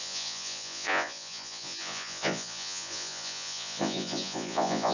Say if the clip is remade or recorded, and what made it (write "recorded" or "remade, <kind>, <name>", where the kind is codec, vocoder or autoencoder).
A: remade, vocoder, Vocos